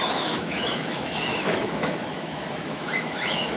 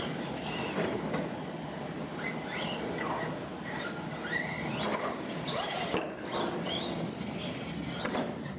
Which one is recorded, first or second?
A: second